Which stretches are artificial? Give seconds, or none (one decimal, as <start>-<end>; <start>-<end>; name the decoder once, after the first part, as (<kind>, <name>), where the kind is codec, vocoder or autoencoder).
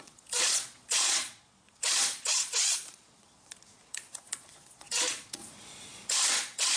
0.0-6.8 (vocoder, Vocos)